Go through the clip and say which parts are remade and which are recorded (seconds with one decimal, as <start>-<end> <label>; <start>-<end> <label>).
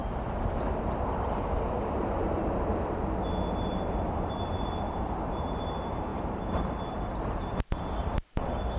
0.0-0.8 recorded; 0.8-2.7 remade; 2.7-3.6 recorded; 3.6-8.8 remade